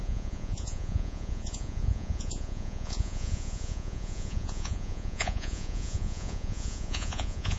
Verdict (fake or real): fake